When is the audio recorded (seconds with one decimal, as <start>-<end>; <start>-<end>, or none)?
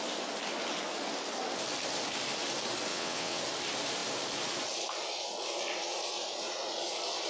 0.0-2.9; 3.4-7.3